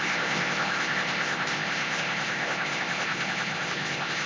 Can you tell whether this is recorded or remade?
remade